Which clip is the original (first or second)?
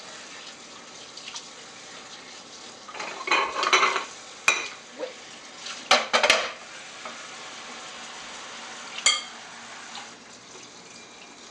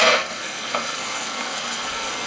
first